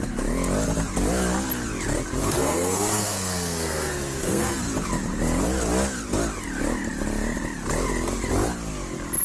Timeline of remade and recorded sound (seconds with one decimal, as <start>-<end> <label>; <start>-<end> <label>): 0.0-2.2 recorded; 2.2-4.6 remade; 4.6-9.2 recorded